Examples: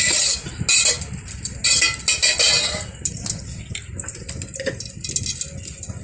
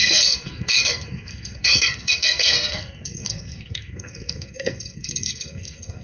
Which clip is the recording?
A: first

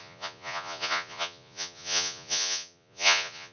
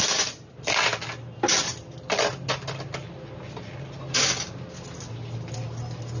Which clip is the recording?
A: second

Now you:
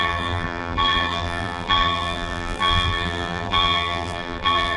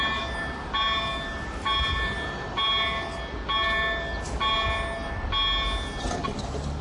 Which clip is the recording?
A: second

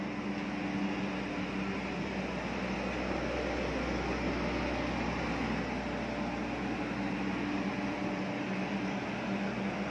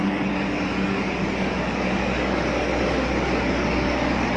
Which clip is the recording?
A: first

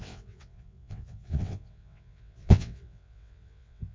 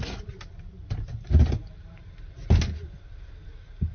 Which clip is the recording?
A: second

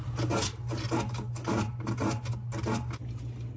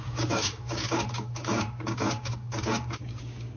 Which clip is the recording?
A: first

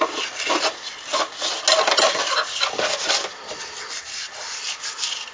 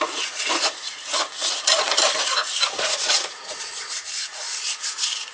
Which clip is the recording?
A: first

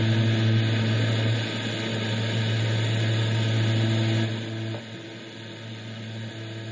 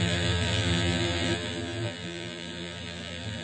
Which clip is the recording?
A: first